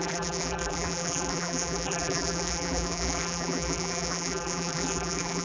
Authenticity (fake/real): fake